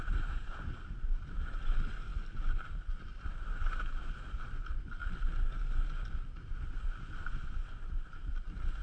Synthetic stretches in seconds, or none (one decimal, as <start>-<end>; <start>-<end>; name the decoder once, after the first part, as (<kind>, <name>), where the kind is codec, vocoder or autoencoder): none